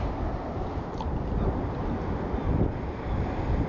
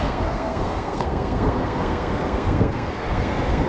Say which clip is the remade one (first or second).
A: second